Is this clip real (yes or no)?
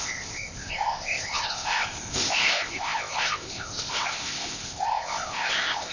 no